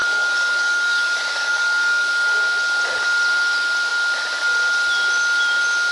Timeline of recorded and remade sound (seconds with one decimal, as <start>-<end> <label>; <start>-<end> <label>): 0.0-2.1 remade; 2.1-5.9 recorded